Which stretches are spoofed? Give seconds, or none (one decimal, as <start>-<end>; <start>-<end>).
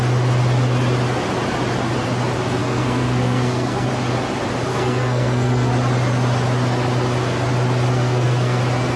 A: 2.6-3.9; 4.7-5.7; 7.9-8.6